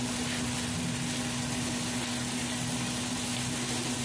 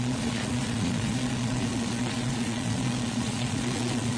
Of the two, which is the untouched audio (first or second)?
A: first